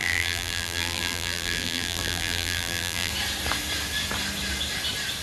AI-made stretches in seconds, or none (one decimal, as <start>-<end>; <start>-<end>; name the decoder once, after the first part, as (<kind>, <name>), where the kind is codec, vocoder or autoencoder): 0.0-3.1 (vocoder, BigVGAN v2)